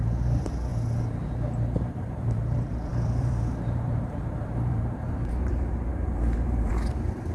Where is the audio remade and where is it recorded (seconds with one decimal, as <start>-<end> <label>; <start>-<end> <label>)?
0.0-0.7 remade; 0.7-1.8 recorded; 1.8-7.3 remade

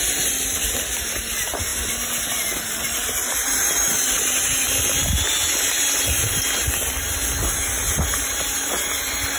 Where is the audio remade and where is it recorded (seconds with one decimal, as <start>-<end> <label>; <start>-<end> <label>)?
0.0-9.4 recorded